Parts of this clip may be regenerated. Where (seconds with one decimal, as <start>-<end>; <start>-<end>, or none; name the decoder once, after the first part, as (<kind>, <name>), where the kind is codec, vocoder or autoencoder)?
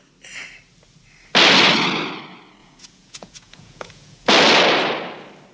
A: 2.6-4.3 (vocoder, Vocos)